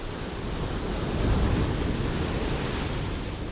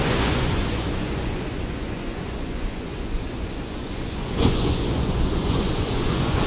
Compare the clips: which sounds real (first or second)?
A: first